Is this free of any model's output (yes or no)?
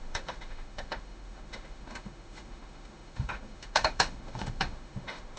no